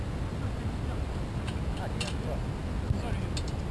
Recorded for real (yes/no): yes